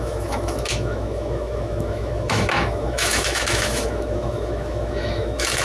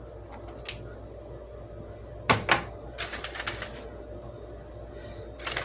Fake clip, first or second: first